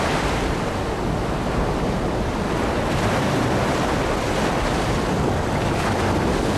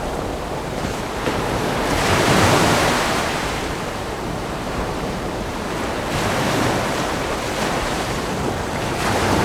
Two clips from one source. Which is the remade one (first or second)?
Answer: second